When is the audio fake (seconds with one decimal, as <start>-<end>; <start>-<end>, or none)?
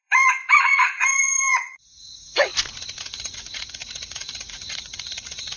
0.0-2.5; 3.0-5.6